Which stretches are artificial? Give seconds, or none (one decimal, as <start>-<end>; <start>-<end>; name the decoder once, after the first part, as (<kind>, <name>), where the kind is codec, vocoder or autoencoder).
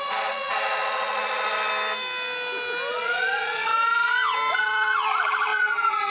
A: 0.0-1.7 (vocoder, Vocos); 2.9-3.7; 4.5-6.1